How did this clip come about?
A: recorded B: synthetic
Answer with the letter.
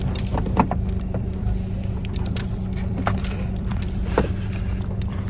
B